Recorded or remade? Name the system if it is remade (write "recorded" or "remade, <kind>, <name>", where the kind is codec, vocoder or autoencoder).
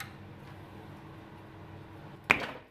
recorded